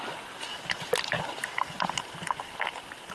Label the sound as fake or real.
real